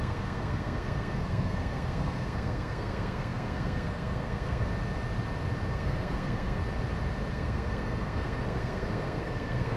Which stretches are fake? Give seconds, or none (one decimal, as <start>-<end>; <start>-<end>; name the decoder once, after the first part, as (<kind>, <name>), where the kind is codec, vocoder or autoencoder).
0.0-4.7 (codec, SNAC); 5.7-6.6; 7.3-9.8